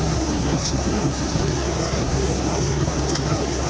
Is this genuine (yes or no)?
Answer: no